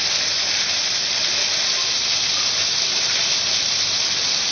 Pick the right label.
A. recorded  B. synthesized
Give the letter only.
A